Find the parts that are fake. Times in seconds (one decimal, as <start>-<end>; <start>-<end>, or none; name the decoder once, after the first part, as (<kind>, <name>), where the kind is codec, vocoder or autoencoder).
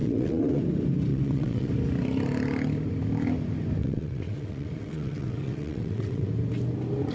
0.0-0.6 (vocoder, WaveNeXt); 1.1-1.7; 3.8-6.3